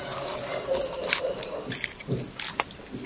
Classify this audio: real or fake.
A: real